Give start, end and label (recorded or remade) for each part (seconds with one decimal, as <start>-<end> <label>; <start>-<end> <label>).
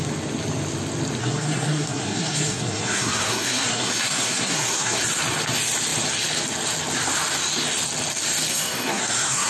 0.0-1.2 recorded; 1.2-5.0 remade; 5.0-8.5 recorded; 8.5-9.5 remade